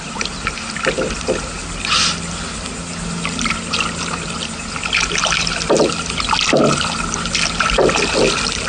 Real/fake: real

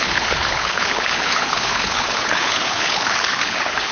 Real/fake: fake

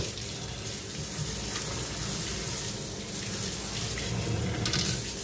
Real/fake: real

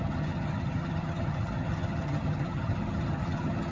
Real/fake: fake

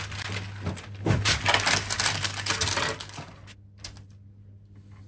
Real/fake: real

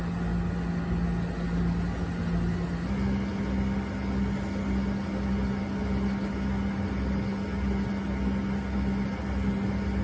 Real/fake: real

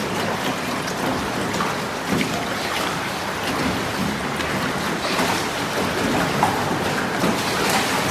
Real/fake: real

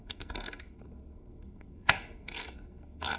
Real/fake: fake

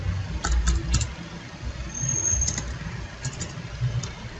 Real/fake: real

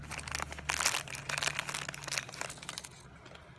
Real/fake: real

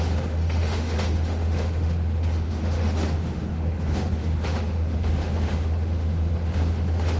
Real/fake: fake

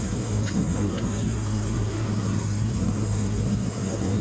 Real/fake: fake